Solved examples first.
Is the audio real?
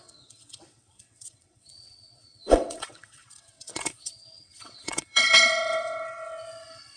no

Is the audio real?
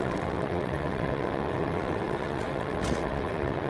no